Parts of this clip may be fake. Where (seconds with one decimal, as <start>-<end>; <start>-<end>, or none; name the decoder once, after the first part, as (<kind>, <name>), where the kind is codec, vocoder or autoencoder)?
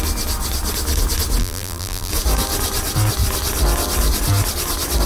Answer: 1.4-2.1 (vocoder, BigVGAN v2)